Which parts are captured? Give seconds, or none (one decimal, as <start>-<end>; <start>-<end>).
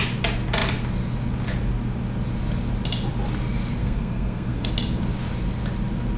0.0-3.8; 4.7-6.2